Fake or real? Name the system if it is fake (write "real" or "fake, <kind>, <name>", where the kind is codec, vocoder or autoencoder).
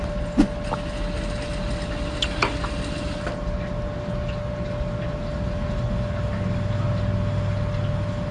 real